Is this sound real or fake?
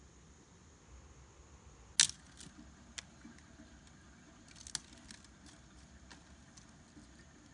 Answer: real